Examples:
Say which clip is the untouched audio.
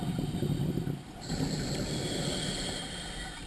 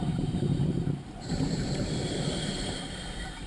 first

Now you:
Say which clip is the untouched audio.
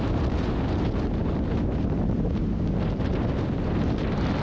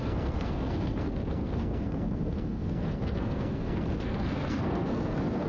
first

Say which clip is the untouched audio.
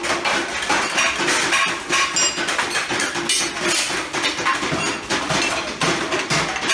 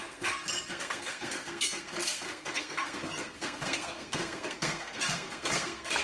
first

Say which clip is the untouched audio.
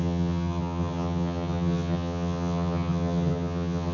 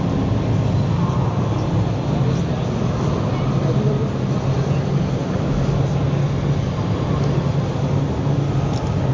second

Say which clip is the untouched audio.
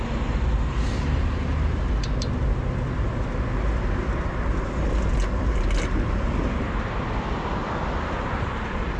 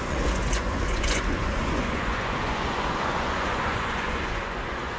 first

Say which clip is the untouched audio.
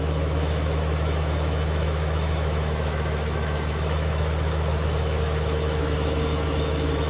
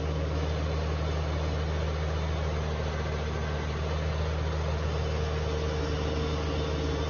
second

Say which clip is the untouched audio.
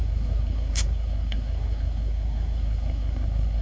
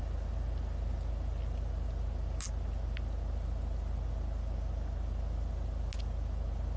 second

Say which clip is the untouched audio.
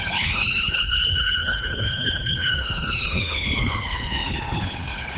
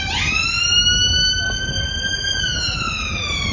second